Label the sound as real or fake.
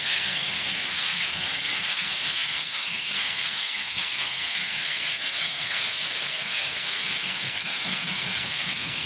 fake